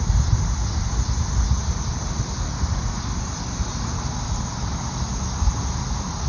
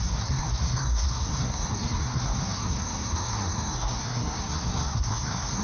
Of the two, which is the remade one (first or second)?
second